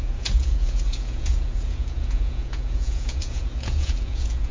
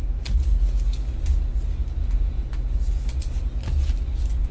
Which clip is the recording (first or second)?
second